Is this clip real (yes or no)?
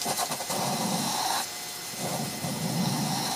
yes